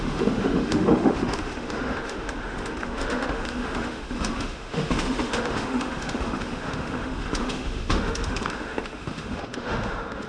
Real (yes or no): no